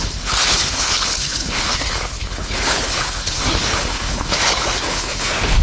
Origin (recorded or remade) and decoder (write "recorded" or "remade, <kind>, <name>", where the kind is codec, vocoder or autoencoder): remade, codec, HILCodec